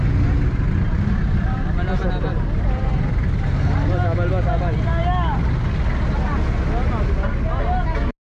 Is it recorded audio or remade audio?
recorded